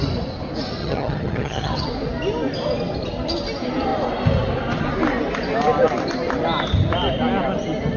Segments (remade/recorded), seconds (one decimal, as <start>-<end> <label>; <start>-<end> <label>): 0.0-0.8 recorded; 0.8-1.9 remade; 1.9-8.0 recorded